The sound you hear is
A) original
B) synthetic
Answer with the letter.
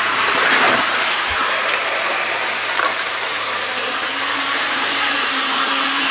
B